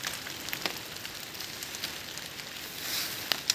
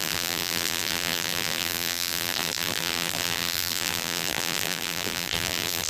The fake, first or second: second